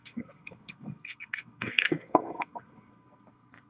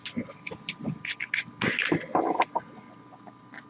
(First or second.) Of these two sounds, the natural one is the second